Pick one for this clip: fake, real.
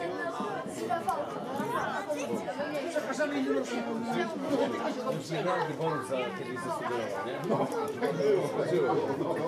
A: real